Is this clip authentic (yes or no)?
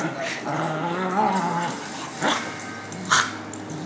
yes